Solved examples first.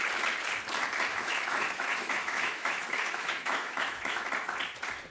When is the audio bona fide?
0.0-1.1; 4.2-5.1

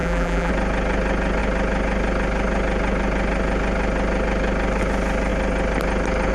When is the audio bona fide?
0.5-6.3

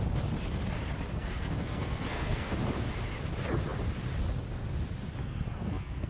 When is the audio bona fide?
0.0-1.1; 2.5-5.2